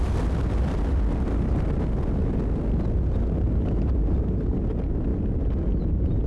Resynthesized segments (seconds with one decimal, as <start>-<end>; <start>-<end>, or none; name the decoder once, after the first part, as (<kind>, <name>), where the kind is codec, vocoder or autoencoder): none